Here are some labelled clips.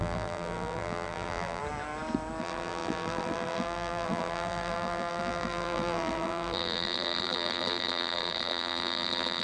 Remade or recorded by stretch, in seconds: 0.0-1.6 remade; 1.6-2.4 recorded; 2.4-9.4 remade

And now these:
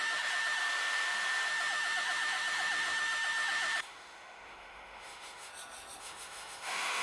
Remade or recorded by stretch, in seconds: 0.0-0.6 remade; 0.6-1.5 recorded; 1.5-5.5 remade; 5.5-6.0 recorded; 6.0-7.0 remade